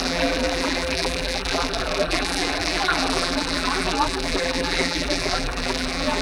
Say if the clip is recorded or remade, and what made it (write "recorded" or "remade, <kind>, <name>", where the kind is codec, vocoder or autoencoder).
remade, vocoder, BigVGAN v2